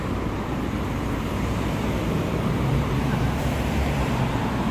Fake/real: fake